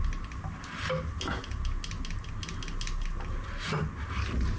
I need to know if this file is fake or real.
real